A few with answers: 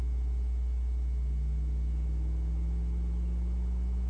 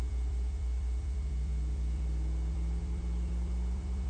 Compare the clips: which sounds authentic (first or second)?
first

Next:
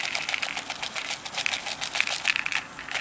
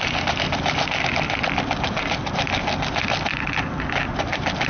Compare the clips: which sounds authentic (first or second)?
first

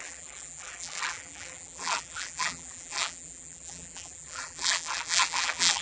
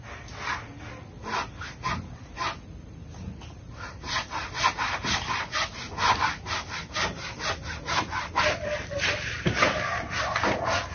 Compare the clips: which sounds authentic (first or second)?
second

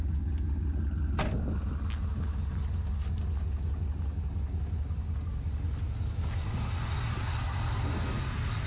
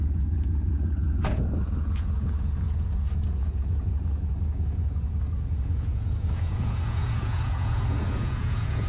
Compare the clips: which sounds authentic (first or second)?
first